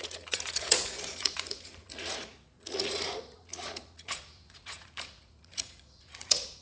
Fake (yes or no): yes